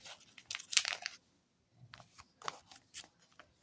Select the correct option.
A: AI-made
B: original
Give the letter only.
B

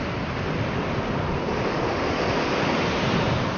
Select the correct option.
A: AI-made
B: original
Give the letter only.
B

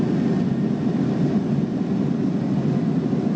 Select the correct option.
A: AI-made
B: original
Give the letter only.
B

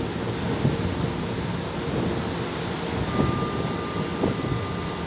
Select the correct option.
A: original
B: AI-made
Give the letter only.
A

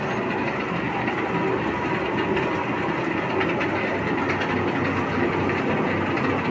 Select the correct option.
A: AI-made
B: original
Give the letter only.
B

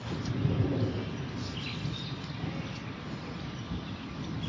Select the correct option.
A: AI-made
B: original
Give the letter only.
B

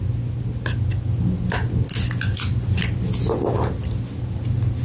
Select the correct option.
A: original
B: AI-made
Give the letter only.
A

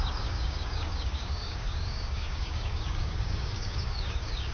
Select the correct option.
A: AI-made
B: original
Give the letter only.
A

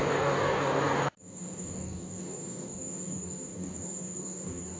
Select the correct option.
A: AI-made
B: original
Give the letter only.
A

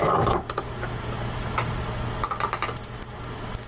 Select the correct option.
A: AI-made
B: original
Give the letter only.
B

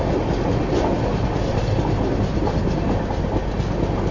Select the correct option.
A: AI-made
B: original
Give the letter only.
B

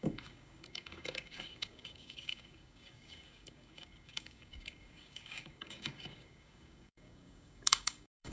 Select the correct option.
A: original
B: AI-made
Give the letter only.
B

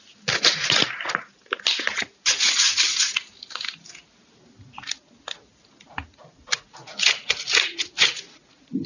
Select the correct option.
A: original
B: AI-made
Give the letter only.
A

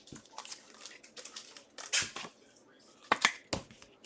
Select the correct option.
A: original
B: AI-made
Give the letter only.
A